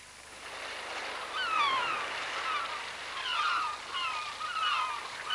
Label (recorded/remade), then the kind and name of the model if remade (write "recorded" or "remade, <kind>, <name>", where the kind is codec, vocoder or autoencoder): recorded